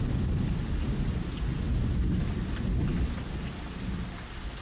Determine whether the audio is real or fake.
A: real